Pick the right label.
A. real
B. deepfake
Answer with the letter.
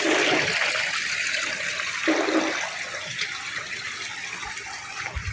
A